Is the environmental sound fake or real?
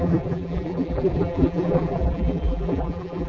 fake